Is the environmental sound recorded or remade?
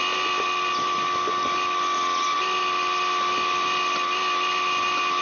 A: recorded